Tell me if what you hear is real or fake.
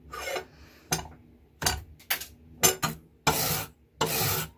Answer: real